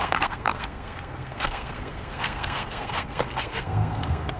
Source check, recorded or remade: remade